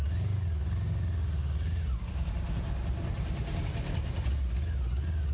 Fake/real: real